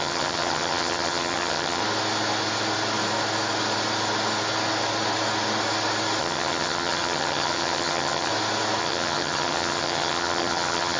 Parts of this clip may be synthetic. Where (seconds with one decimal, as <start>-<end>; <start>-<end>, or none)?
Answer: 0.0-1.8; 6.2-8.3; 8.8-11.0